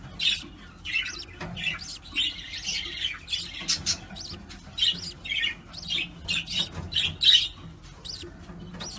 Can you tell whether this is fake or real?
real